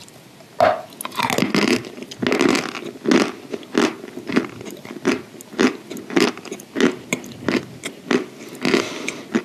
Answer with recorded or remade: recorded